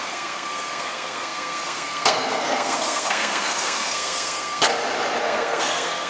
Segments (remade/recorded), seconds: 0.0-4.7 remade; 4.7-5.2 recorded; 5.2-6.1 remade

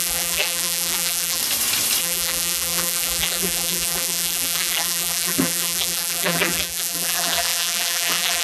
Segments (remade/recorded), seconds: 0.0-1.4 remade; 1.4-2.0 recorded; 2.0-8.4 remade

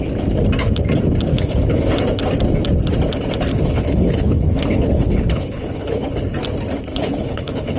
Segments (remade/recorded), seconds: 0.0-1.3 recorded; 1.3-1.9 remade; 1.9-3.5 recorded; 3.5-6.2 remade; 6.2-6.9 recorded; 6.9-7.8 remade

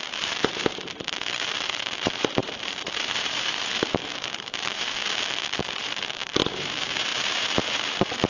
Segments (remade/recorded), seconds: 0.0-5.0 remade; 5.0-5.6 recorded; 5.6-8.3 remade

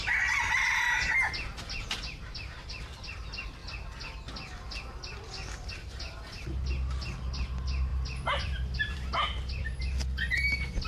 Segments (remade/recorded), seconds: 0.0-7.9 recorded; 7.9-9.8 remade; 9.8-10.9 recorded

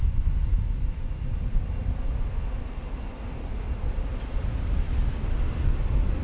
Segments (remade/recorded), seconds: 0.0-6.2 recorded

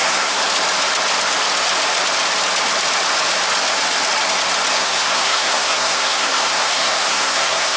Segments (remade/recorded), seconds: 0.0-0.4 remade; 0.4-4.7 recorded; 4.7-7.8 remade